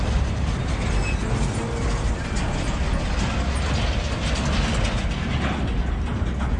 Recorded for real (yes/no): yes